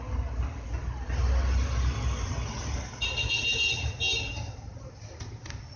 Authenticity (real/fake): real